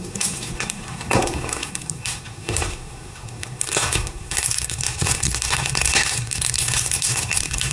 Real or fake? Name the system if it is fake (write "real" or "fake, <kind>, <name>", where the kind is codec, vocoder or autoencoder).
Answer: fake, codec, SNAC